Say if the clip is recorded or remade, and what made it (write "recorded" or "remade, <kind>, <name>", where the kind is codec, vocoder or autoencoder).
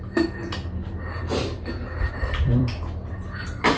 remade, vocoder, BigVGAN v2